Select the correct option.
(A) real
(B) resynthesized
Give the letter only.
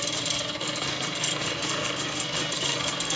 B